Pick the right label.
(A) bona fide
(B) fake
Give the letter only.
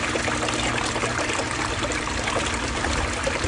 A